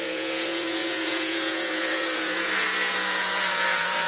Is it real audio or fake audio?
fake